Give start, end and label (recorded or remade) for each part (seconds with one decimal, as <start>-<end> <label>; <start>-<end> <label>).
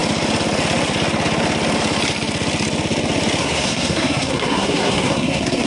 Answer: 0.0-3.4 recorded; 3.4-5.7 remade